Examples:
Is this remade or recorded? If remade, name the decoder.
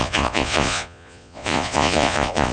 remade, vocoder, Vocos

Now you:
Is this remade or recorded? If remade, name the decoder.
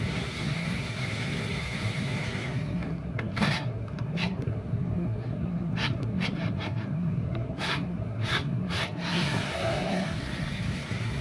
remade, codec, SNAC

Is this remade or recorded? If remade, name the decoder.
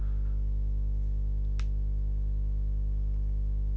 recorded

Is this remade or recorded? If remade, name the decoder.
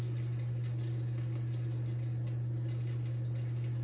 recorded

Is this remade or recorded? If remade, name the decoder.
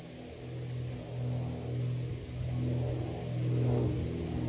recorded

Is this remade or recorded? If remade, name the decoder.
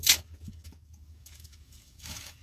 remade, codec, DAC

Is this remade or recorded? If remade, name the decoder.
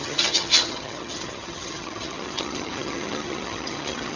remade, vocoder, HiFi-GAN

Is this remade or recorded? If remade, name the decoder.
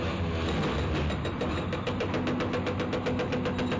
recorded